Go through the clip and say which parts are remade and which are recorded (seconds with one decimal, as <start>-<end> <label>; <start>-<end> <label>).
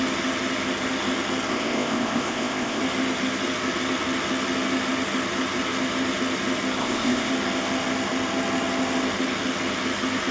0.0-1.5 recorded; 1.5-2.8 remade; 2.8-6.8 recorded; 6.8-7.3 remade; 7.3-10.3 recorded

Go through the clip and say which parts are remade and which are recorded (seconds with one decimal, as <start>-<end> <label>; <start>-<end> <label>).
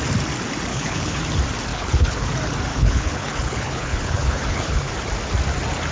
0.0-0.7 recorded; 0.7-1.2 remade; 1.2-1.7 recorded; 1.7-2.3 remade; 2.3-2.7 recorded; 2.7-4.9 remade; 4.9-5.9 recorded